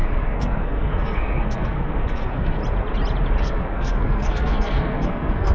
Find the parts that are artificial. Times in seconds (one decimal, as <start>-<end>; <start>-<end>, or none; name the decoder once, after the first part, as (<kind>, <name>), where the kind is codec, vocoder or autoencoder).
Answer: 0.0-2.6 (codec, SNAC); 3.4-5.5